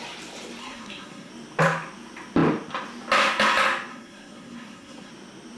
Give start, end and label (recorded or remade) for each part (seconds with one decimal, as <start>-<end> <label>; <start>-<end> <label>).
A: 0.0-0.6 recorded; 0.6-1.3 remade; 1.3-3.9 recorded; 3.9-5.1 remade; 5.1-5.6 recorded

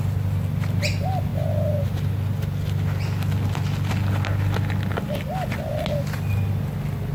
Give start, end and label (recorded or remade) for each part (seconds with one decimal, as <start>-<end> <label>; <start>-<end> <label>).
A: 0.0-7.1 recorded